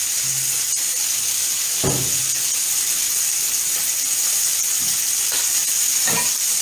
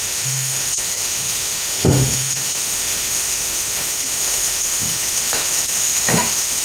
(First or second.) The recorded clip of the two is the first